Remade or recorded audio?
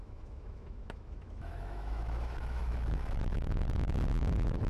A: remade